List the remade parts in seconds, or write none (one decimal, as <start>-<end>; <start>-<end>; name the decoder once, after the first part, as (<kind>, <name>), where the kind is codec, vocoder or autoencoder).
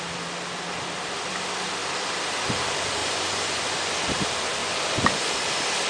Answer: 3.0-3.9 (vocoder, Vocos); 4.6-5.3